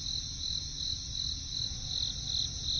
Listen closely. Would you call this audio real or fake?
real